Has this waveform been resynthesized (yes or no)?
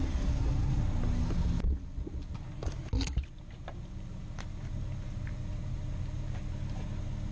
no